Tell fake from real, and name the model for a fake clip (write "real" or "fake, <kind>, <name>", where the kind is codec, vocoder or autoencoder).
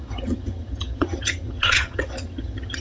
fake, vocoder, HiFi-GAN